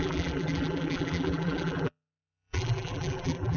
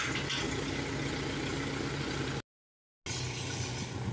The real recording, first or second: second